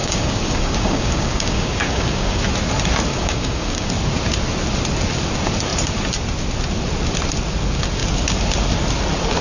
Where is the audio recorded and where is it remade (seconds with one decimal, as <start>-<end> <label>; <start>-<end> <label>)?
0.0-2.4 remade; 2.4-3.1 recorded; 3.1-3.9 remade; 3.9-9.4 recorded